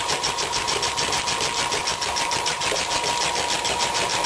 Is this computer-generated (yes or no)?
yes